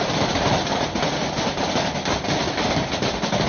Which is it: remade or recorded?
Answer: recorded